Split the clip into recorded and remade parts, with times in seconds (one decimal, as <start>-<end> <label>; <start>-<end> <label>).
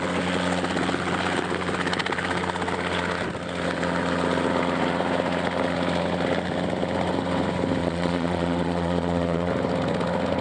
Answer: 0.0-7.8 recorded; 7.8-9.5 remade; 9.5-10.4 recorded